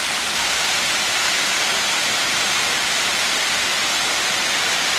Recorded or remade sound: remade